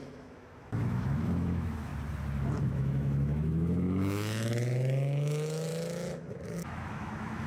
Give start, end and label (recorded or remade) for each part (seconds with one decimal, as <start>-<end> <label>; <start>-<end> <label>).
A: 0.0-1.9 remade; 1.9-2.6 recorded; 2.6-7.5 remade